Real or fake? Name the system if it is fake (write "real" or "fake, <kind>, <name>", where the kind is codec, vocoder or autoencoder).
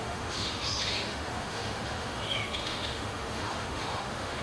fake, autoencoder, DAC-VAE